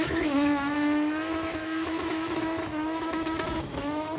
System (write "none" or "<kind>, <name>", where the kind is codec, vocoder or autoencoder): autoencoder, DAC-VAE